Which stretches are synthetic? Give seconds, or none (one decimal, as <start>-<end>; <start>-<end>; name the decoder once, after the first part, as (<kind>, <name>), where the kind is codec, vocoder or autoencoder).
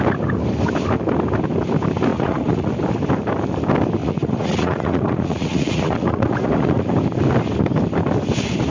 2.1-2.7 (vocoder, Vocos); 4.0-6.9